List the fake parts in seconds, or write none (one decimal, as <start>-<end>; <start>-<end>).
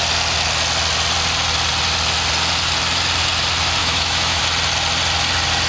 3.8-4.4